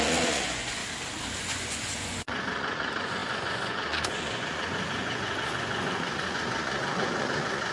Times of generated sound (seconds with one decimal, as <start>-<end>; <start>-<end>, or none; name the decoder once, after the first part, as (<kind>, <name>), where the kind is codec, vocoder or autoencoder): 0.0-0.8 (vocoder, Vocos); 1.4-7.7